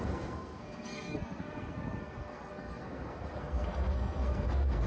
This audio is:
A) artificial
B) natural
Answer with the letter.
A